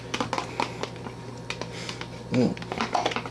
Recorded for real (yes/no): yes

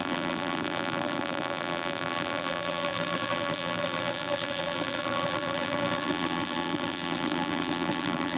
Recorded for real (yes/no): no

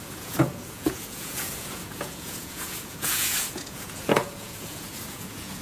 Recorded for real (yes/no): no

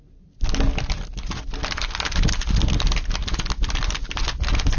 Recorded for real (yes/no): yes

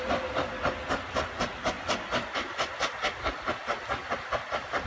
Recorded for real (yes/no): yes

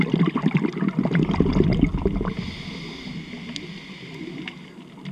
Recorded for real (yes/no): yes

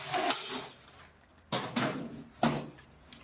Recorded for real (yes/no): yes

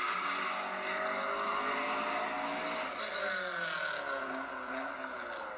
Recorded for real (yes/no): yes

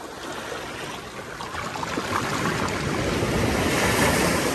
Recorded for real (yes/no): yes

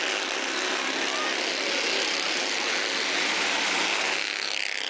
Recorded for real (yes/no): yes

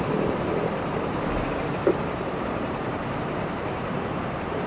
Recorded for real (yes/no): no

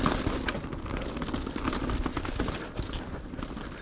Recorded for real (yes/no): yes